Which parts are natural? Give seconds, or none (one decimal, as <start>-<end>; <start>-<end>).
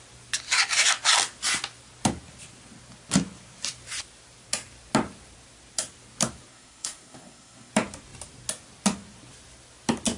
0.0-6.5; 7.7-10.2